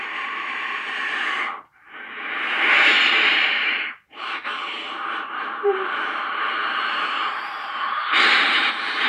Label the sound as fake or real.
fake